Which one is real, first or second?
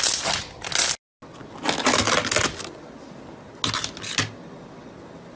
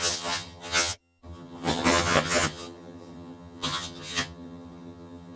first